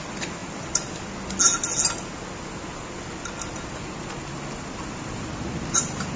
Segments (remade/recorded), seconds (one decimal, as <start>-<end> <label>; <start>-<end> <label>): 0.0-6.2 recorded